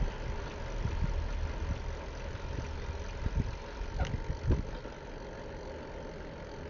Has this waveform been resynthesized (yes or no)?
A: no